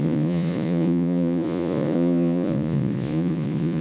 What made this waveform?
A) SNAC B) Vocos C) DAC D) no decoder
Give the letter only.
B